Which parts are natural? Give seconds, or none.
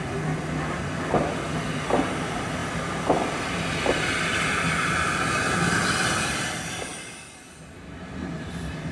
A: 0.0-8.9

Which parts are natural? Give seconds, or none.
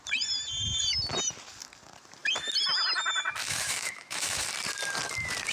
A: 0.0-3.4; 4.4-5.5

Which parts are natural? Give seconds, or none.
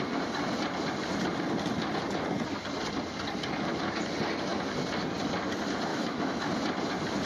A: 0.0-5.9; 6.5-7.3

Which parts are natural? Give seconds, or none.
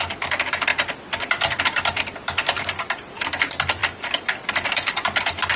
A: 0.0-5.6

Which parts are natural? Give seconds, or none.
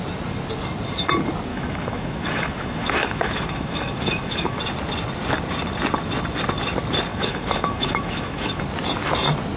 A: 0.0-1.5; 4.6-7.1; 8.6-9.6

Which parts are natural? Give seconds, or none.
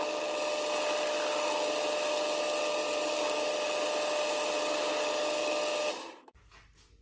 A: 0.0-7.0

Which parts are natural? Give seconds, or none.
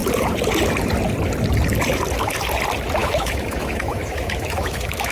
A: 0.0-3.0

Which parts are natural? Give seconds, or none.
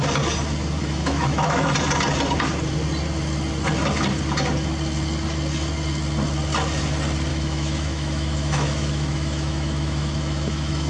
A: 0.0-0.8; 1.7-7.3